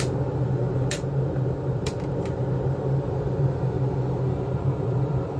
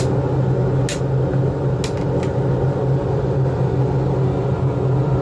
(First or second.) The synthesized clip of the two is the first